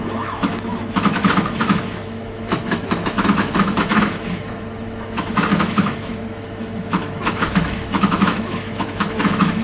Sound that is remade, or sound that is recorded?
remade